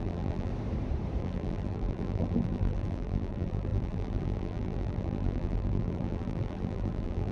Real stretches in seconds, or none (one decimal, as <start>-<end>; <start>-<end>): 0.5-1.2